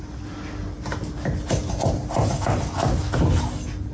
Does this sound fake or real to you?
real